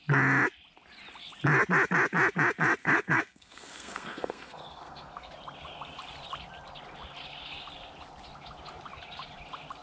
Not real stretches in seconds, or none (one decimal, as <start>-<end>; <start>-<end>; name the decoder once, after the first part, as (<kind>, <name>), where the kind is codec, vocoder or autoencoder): 2.8-5.3 (codec, SNAC)